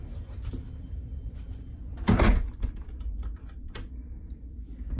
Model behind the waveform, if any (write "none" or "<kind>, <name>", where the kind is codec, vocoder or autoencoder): vocoder, BigVGAN v2